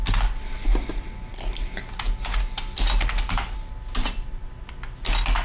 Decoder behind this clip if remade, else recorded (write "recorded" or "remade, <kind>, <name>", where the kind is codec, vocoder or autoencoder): recorded